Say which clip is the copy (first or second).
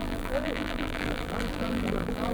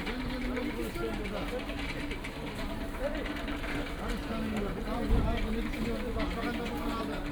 first